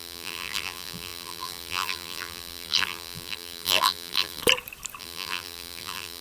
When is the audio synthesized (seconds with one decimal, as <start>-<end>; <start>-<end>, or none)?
0.0-4.4; 5.0-6.2